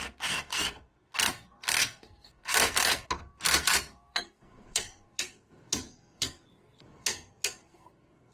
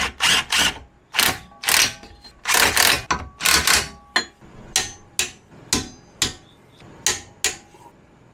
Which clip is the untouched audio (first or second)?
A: second